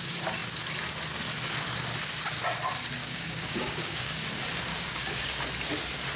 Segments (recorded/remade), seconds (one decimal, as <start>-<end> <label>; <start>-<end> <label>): 0.0-3.0 recorded; 3.0-4.3 remade; 4.3-4.7 recorded; 4.7-5.4 remade; 5.4-6.2 recorded